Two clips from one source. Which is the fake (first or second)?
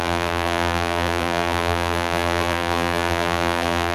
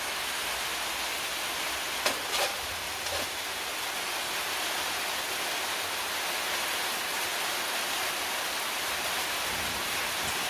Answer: first